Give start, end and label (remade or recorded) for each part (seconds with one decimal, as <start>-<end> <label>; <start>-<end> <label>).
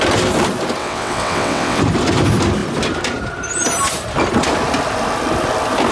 0.0-0.8 recorded; 0.8-1.8 remade; 1.8-5.9 recorded